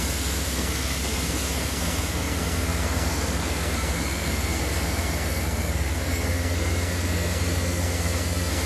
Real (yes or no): no